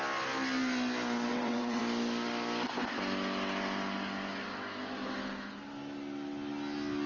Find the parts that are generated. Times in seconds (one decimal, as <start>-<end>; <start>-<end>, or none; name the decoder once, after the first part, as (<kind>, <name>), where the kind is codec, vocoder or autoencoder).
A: 1.3-1.8 (vocoder, WaveNeXt)